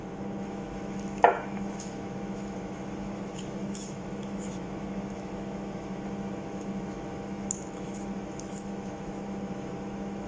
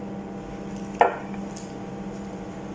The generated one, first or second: first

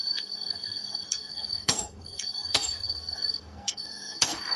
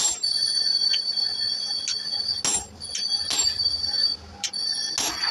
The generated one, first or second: first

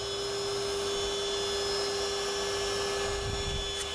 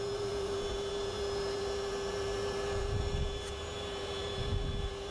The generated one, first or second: second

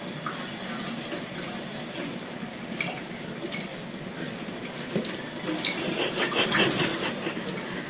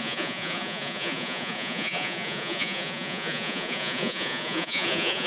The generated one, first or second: second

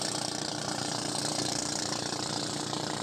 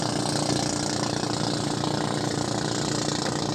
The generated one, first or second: first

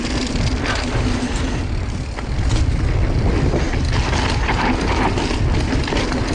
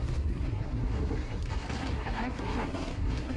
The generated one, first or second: second